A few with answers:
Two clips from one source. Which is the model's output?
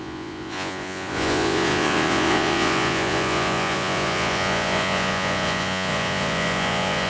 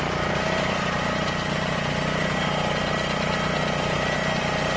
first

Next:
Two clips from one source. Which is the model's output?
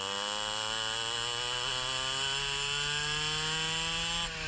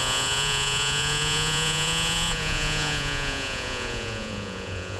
second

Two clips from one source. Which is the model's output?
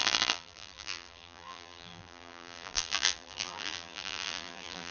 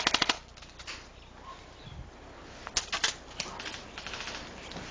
first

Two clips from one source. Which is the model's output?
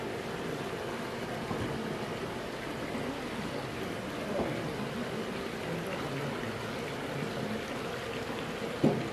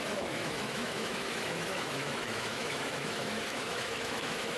second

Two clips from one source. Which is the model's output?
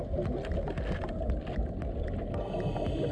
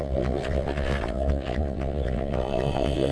second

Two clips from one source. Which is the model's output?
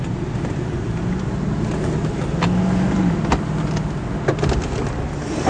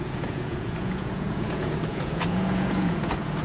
second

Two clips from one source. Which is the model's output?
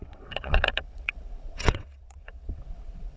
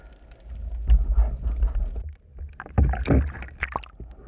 first